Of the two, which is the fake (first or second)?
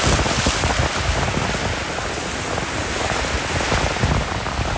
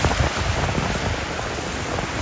second